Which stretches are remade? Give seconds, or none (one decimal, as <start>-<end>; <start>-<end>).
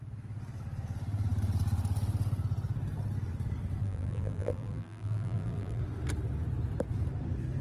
3.8-5.8